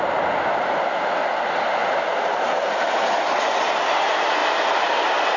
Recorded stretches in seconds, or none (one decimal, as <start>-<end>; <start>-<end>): 0.0-1.8; 2.9-4.4; 4.9-5.4